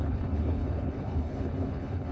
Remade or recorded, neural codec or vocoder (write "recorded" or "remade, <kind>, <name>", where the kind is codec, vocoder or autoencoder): remade, codec, HILCodec